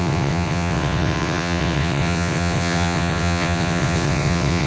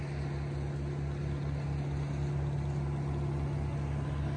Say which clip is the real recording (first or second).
second